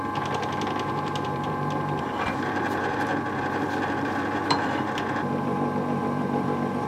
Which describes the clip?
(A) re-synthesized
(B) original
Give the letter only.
A